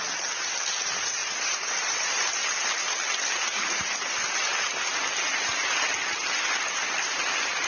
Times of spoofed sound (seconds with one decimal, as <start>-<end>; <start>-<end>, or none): 1.2-2.3

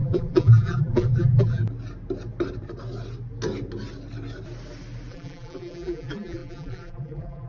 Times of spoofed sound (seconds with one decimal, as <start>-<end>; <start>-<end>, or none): 0.0-1.6; 5.1-7.5

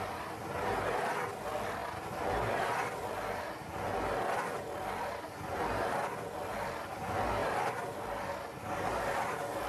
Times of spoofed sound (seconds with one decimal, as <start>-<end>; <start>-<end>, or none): none